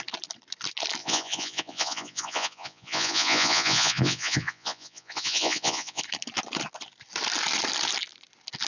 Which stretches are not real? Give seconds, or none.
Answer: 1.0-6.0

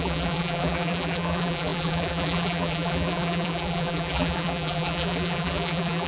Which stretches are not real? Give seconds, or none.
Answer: 0.0-6.1

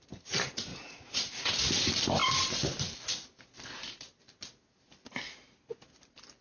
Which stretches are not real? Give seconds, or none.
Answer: 0.7-1.5

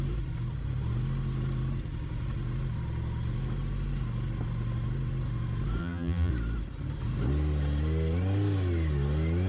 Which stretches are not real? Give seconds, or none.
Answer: 5.8-6.3